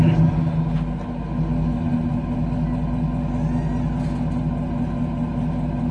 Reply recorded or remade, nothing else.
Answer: recorded